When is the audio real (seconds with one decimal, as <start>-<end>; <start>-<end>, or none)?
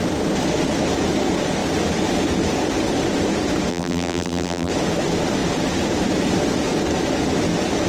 0.0-3.7; 4.7-7.9